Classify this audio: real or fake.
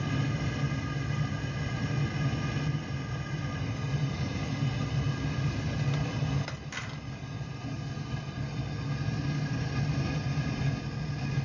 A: real